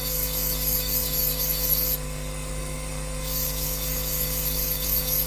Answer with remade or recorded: remade